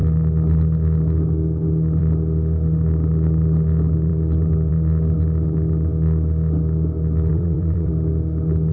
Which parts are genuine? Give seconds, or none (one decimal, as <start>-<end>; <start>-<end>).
0.0-7.3; 7.9-8.7